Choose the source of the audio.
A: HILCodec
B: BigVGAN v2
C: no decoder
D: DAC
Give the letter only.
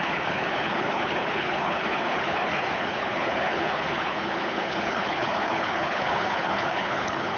A